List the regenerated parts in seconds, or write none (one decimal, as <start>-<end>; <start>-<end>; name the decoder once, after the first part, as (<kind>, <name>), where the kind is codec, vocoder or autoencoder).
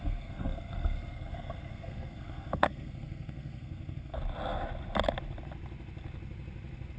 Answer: 0.0-4.2 (codec, SNAC)